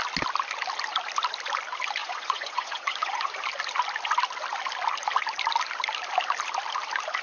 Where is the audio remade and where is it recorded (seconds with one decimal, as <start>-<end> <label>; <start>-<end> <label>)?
0.0-2.0 recorded; 2.0-3.3 remade; 3.3-7.2 recorded